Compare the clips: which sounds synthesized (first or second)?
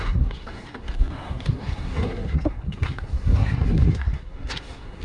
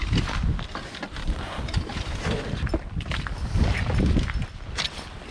first